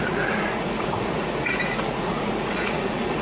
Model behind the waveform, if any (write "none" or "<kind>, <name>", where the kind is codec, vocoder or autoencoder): vocoder, Vocos